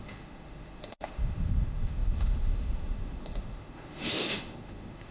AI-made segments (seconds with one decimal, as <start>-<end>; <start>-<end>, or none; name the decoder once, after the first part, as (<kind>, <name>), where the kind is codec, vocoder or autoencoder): 0.0-5.1 (autoencoder, DAC-VAE)